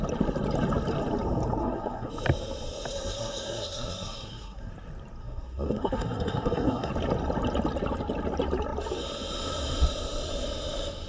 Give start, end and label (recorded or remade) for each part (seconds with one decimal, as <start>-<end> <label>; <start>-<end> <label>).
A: 0.0-1.6 recorded; 1.6-2.1 remade; 2.1-2.9 recorded; 2.9-4.7 remade; 4.7-5.2 recorded; 5.2-6.9 remade; 6.9-11.1 recorded